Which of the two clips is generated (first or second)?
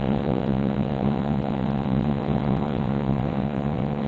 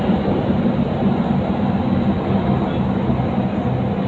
first